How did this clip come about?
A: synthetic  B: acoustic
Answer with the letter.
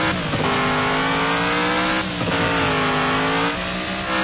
B